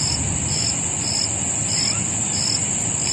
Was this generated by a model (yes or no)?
no